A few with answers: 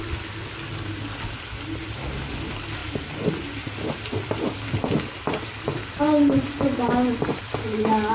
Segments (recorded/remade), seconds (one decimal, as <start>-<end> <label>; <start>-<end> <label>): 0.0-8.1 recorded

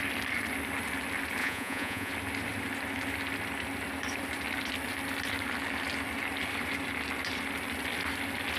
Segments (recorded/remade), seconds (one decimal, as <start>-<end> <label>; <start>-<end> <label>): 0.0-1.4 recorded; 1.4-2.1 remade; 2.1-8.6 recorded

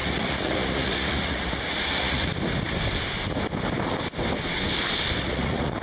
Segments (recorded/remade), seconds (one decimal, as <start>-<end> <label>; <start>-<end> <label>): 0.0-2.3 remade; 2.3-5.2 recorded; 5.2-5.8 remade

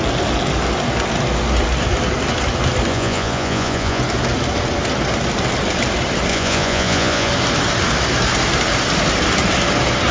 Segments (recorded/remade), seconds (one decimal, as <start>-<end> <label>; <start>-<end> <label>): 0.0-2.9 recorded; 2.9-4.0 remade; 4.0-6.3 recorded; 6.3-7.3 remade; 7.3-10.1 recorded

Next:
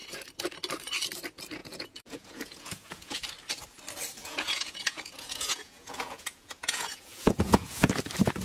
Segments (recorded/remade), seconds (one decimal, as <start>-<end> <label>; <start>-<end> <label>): 0.0-1.6 recorded; 1.6-3.2 remade; 3.2-4.2 recorded; 4.2-7.9 remade; 7.9-8.4 recorded

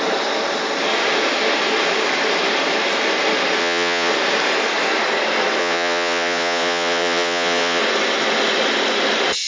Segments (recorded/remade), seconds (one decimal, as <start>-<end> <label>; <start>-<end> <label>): 0.0-3.6 recorded; 3.6-4.1 remade; 4.1-5.6 recorded; 5.6-7.8 remade; 7.8-9.5 recorded

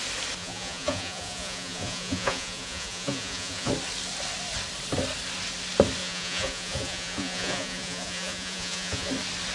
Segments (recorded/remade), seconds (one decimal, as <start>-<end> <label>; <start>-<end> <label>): 0.0-0.4 recorded; 0.4-3.7 remade; 3.7-6.0 recorded; 6.0-9.1 remade; 9.1-9.5 recorded

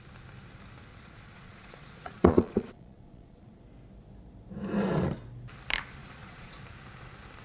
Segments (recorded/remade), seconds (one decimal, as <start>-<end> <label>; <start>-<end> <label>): 0.0-0.9 recorded; 0.9-3.6 remade; 3.6-6.0 recorded; 6.0-6.6 remade; 6.6-7.4 recorded